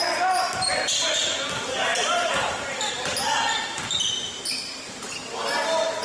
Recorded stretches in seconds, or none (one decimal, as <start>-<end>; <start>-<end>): 0.0-1.9; 5.5-6.0